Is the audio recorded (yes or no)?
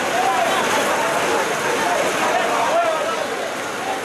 yes